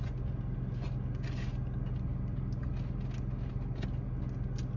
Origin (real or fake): real